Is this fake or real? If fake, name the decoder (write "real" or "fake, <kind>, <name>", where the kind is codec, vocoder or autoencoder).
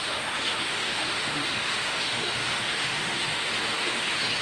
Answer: fake, autoencoder, DAC-VAE